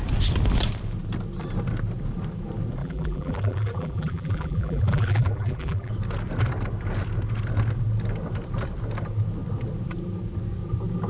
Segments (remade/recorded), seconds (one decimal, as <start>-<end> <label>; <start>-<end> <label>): 0.0-2.8 recorded; 2.8-5.9 remade; 5.9-11.1 recorded